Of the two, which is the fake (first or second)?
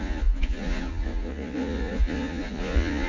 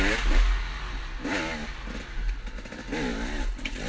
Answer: first